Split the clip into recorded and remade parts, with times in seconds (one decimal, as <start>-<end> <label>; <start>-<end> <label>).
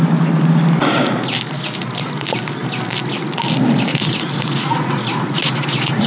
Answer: 0.0-3.9 recorded; 3.9-6.1 remade